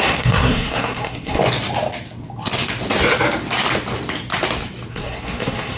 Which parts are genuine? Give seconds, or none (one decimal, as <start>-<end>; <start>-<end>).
1.4-4.9